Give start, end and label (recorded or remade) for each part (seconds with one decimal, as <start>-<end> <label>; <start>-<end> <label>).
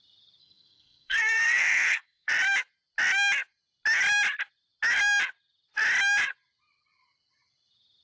0.0-0.4 recorded; 0.4-2.3 remade; 2.3-8.0 recorded